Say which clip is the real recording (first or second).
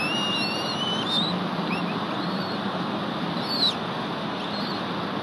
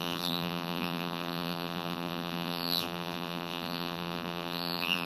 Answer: first